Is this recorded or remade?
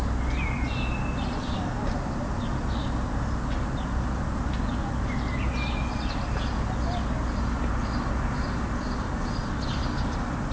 recorded